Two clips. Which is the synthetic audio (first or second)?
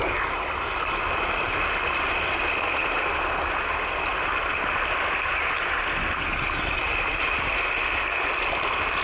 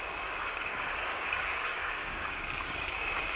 second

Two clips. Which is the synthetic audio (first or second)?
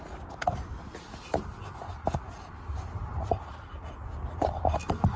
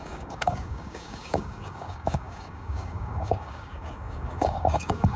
second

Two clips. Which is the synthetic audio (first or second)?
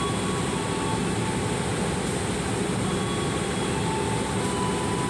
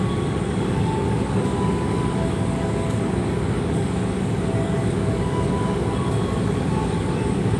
second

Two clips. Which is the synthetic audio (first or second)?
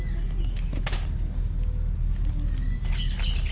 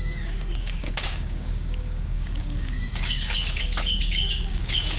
second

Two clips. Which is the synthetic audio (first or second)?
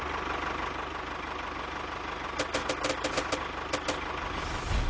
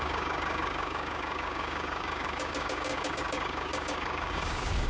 second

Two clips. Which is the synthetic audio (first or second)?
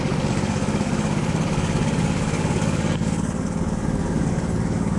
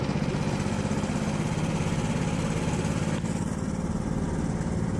first